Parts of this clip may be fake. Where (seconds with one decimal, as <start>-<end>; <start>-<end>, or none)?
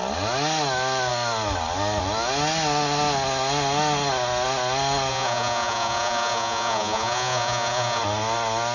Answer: 5.1-8.0